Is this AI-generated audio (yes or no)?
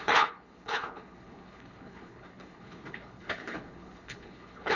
yes